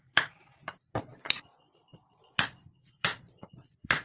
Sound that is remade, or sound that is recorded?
remade